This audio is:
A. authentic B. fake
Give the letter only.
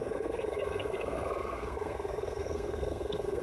B